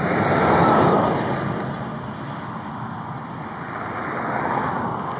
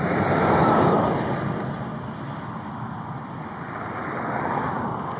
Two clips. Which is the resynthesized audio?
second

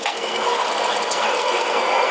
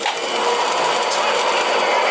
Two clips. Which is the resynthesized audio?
first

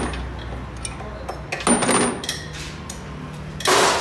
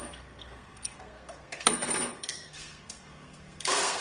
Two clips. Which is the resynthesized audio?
second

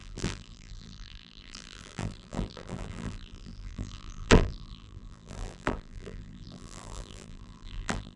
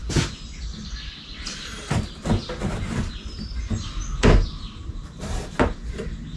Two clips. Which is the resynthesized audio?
first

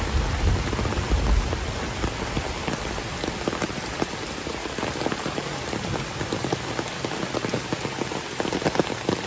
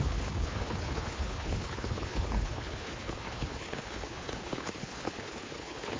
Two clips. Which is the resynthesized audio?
second